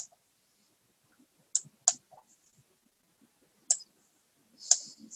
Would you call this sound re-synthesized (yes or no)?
no